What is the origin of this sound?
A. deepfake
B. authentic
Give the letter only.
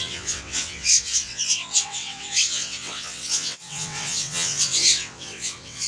A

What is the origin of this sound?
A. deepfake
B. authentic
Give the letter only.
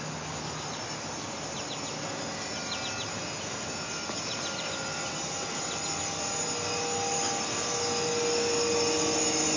B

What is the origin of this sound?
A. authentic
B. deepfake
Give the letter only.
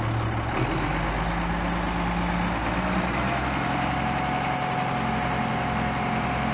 A